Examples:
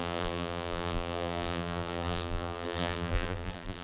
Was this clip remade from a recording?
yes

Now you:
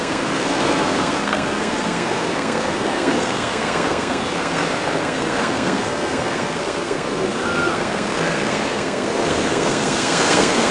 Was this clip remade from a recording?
yes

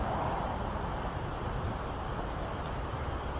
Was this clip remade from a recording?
yes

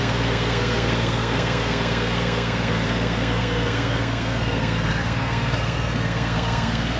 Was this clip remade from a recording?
yes